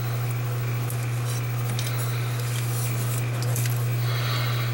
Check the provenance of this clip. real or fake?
real